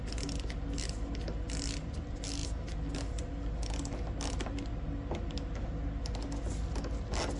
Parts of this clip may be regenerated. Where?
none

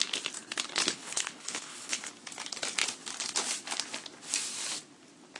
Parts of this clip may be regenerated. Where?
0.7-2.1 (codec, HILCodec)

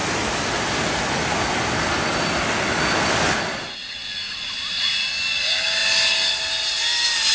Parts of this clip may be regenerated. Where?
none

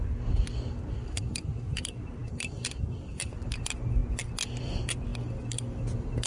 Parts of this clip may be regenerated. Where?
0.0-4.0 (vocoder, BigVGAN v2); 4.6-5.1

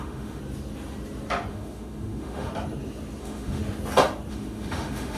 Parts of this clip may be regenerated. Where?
0.0-0.4 (autoencoder, DAC-VAE); 1.5-2.5; 3.2-3.6; 4.3-5.2

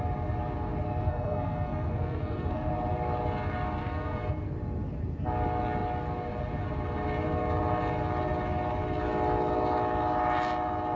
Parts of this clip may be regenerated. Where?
1.0-2.7 (codec, SNAC); 3.8-4.5

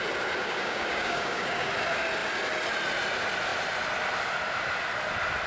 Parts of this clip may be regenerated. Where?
0.4-1.7 (codec, DAC)

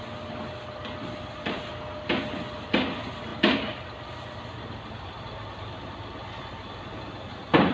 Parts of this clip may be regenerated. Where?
none